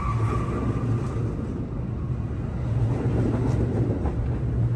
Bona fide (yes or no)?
yes